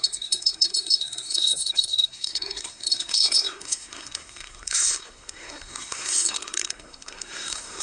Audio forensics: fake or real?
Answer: fake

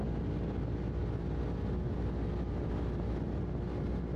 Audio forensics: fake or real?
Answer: real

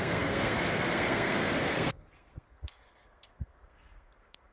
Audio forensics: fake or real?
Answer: fake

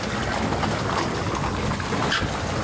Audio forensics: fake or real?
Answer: real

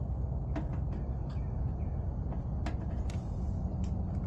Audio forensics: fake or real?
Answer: real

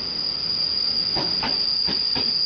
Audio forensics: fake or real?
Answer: real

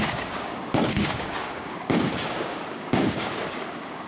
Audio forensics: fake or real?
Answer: fake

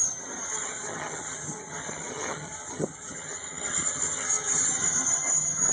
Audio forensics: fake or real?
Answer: fake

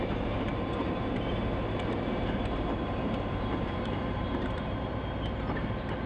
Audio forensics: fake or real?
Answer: fake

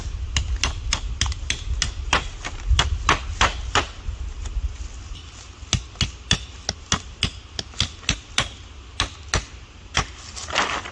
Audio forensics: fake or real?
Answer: real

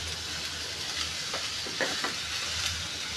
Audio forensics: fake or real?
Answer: real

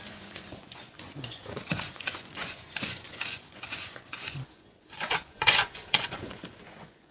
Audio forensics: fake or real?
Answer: fake